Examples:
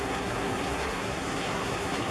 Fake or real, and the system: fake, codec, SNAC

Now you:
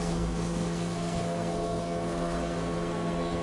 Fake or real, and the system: fake, codec, SNAC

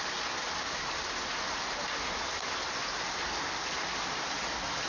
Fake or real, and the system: real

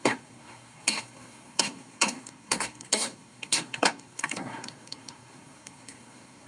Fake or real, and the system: fake, codec, SNAC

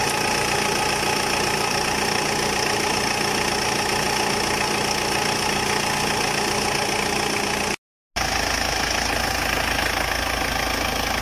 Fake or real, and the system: real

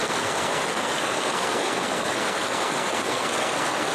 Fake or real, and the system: fake, codec, SNAC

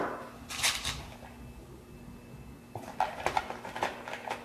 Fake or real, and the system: real